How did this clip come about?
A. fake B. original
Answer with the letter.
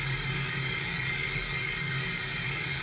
A